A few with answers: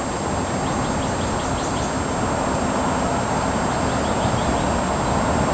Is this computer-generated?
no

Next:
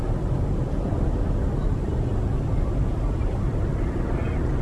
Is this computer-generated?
no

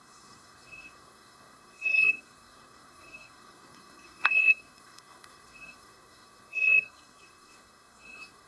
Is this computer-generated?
yes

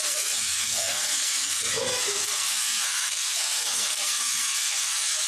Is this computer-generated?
yes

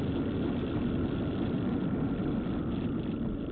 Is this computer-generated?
no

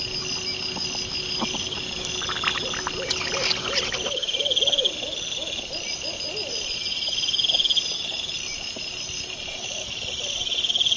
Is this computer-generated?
no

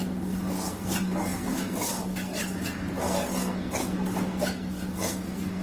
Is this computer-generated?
yes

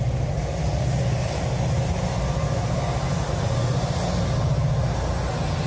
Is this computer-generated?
no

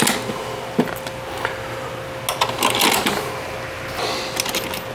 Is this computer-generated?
no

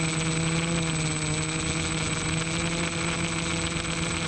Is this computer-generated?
no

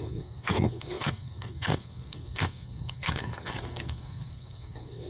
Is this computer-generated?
yes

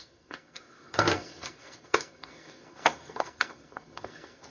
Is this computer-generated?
yes